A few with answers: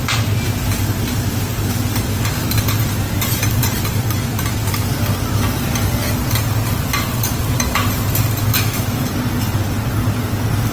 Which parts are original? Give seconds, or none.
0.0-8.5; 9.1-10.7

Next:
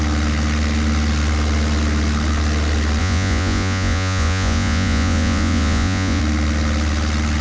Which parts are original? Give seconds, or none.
0.0-3.0; 6.2-7.4

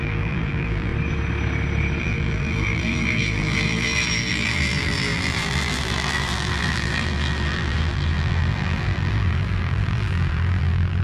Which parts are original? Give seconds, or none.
0.9-2.0

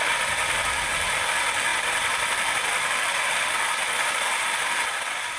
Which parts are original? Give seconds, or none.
0.0-5.4

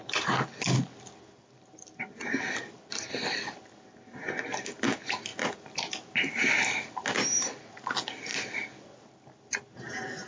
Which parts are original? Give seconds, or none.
0.0-10.3

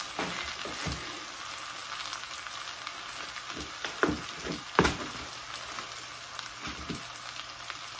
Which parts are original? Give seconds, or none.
0.0-8.0

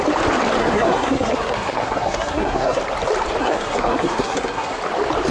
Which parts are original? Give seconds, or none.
0.0-0.6; 2.8-3.4; 4.8-5.3